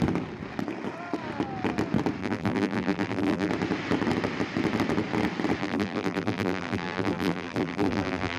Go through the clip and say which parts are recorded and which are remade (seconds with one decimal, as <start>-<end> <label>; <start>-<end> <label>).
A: 0.0-2.2 recorded; 2.2-3.5 remade; 3.5-5.6 recorded; 5.6-8.4 remade